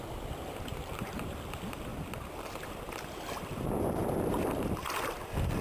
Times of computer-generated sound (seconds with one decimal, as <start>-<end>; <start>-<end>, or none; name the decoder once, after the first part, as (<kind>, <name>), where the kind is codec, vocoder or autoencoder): 0.7-1.3 (vocoder, BigVGAN v2)